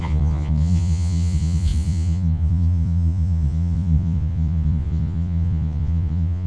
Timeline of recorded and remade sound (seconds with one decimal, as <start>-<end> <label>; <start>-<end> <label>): 0.0-6.5 remade